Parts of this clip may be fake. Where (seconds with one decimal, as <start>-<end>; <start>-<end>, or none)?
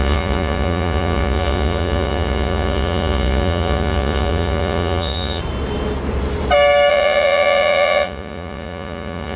0.0-5.4; 6.9-9.4